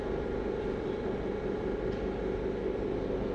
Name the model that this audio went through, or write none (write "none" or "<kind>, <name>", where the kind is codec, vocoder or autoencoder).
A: none